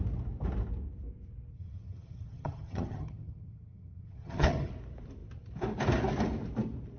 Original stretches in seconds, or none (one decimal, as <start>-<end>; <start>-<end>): 0.0-1.5; 4.7-7.0